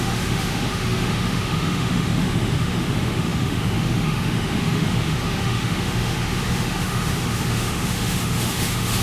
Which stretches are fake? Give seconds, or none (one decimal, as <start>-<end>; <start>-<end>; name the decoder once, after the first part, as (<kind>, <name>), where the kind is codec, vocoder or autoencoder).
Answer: 0.0-9.0 (autoencoder, DAC-VAE)